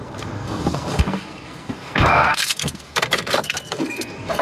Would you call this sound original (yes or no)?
no